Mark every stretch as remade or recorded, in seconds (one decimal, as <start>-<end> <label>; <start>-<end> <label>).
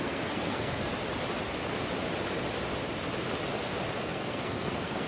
0.0-0.9 remade; 0.9-4.0 recorded; 4.0-5.1 remade